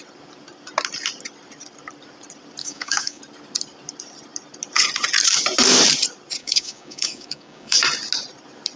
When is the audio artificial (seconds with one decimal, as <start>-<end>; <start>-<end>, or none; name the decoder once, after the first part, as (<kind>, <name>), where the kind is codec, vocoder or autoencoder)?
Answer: 2.6-3.2 (codec, DAC); 6.4-7.8